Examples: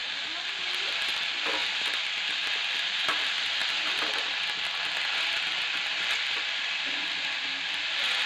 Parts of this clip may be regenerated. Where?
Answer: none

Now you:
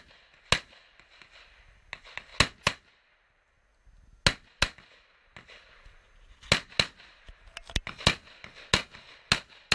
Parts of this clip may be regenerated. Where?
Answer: none